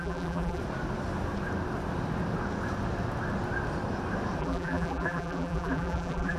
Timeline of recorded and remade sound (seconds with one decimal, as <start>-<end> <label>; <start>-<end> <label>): 0.0-0.6 remade; 0.6-4.4 recorded; 4.4-6.4 remade